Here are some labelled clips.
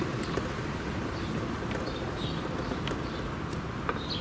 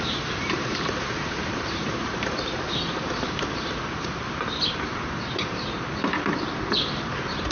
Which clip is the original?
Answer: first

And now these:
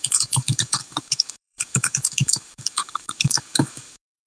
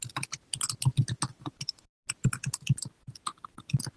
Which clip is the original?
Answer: second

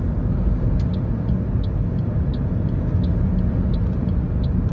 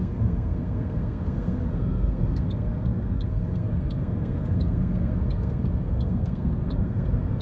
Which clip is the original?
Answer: first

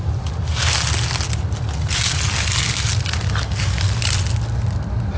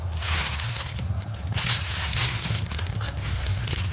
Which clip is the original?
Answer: first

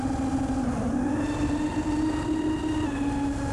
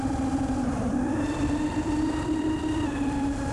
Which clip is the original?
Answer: first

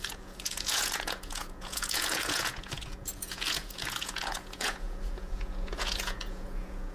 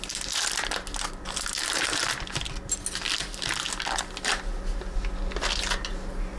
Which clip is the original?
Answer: second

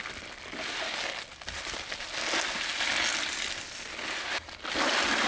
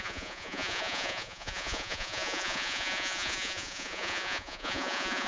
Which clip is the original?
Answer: first